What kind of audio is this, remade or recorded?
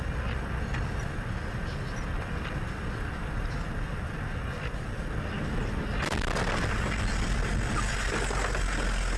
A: recorded